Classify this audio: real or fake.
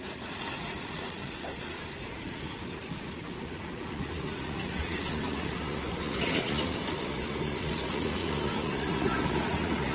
fake